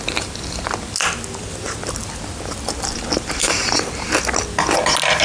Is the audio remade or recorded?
recorded